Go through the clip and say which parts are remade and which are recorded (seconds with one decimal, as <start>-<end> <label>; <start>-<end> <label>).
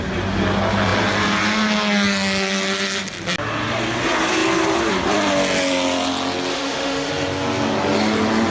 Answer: 0.0-6.5 recorded; 6.5-7.1 remade; 7.1-8.5 recorded